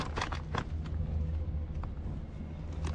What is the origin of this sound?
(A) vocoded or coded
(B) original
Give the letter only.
B